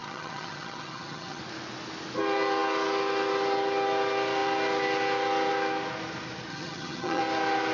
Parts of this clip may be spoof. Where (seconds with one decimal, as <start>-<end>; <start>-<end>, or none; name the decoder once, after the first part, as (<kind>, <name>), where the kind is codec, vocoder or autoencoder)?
0.0-1.4 (vocoder, HiFi-GAN); 6.5-7.2